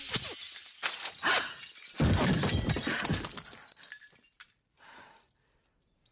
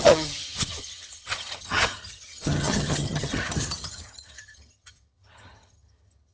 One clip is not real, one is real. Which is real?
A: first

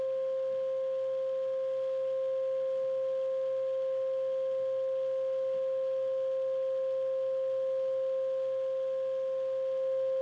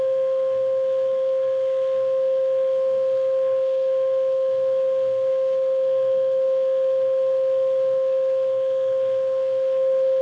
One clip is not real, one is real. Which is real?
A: first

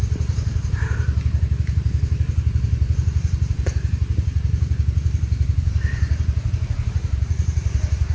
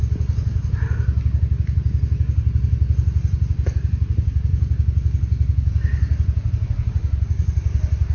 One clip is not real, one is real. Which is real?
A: second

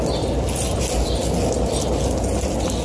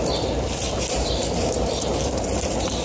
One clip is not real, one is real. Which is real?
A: first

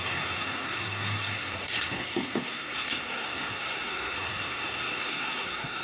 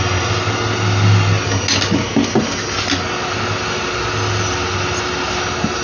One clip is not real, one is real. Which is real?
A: second